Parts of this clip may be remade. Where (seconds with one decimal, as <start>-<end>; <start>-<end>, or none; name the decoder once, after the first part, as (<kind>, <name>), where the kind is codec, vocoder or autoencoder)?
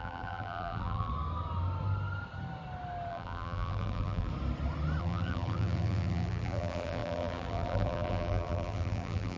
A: 0.0-1.1 (vocoder, BigVGAN v2); 3.1-4.3; 5.0-9.4